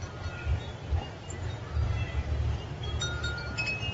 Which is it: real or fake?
real